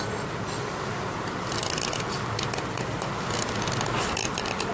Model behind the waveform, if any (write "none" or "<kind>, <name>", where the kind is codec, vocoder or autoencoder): none